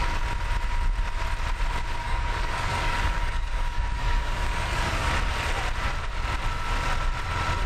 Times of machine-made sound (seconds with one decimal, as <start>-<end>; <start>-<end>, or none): 2.0-5.1